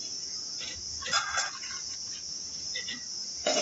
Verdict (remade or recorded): remade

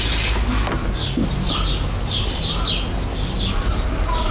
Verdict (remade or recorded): recorded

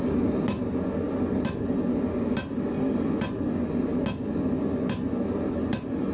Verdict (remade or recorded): recorded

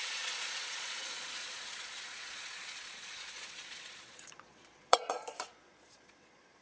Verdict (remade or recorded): remade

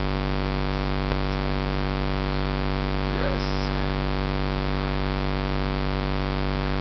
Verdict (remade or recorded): recorded